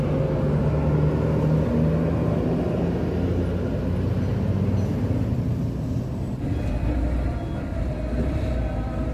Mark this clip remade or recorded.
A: recorded